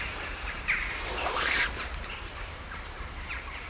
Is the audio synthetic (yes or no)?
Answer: yes